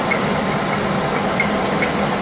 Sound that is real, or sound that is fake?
real